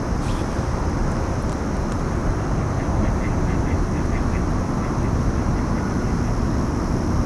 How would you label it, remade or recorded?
recorded